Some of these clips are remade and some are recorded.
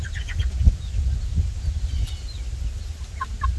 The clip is recorded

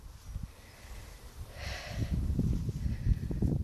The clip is recorded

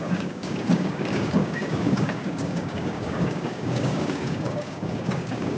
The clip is remade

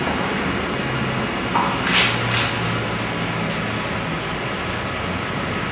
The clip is recorded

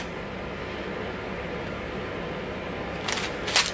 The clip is recorded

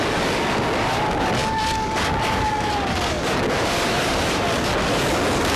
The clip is remade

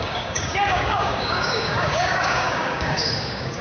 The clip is remade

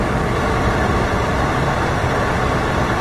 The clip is recorded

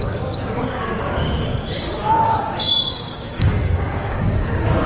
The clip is remade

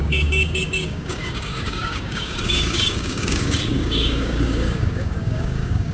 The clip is remade